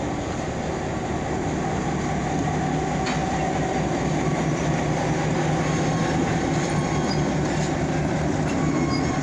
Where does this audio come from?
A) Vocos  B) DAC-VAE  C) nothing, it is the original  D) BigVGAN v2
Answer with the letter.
C